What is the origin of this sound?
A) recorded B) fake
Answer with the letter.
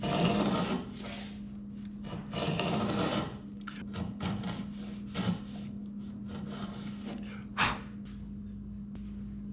A